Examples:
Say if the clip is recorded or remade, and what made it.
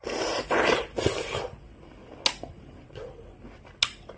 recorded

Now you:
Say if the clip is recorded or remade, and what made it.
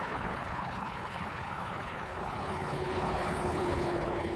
remade, codec, HILCodec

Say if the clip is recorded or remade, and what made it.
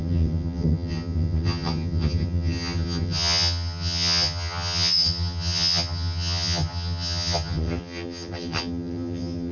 remade, vocoder, HiFi-GAN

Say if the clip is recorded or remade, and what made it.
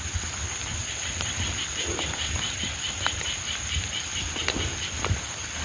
recorded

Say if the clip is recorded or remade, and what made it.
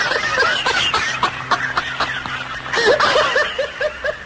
recorded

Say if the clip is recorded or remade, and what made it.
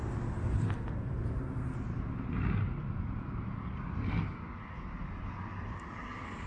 recorded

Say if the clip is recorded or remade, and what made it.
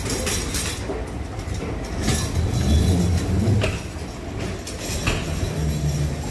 recorded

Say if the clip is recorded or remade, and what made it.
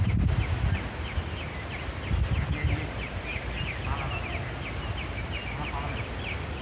recorded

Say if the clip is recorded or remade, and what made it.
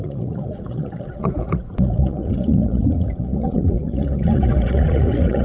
remade, vocoder, Vocos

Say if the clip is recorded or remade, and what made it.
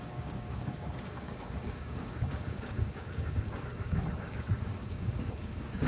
remade, codec, DAC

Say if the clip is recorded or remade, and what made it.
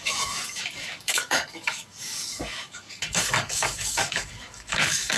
remade, codec, DAC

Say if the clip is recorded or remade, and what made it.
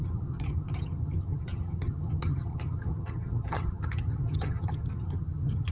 remade, vocoder, HiFi-GAN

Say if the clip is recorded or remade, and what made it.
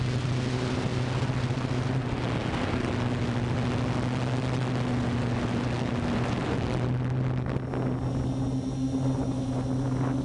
recorded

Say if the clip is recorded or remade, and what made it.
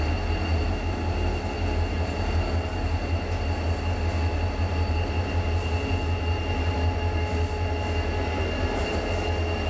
recorded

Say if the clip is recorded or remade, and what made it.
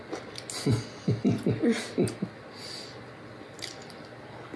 recorded